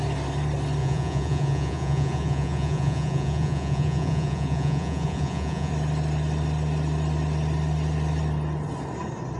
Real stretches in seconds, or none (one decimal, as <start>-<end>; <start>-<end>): 0.0-0.8; 5.7-9.4